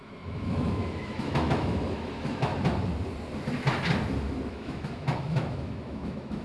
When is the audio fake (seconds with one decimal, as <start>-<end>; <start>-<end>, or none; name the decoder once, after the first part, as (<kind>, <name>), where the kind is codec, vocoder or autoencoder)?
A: 0.0-2.5 (autoencoder, DAC-VAE); 4.5-6.4